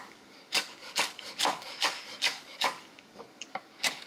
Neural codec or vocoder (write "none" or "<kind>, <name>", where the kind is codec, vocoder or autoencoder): codec, DAC